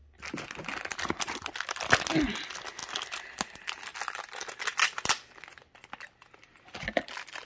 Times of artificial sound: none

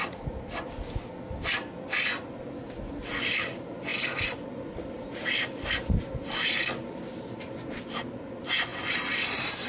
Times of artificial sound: none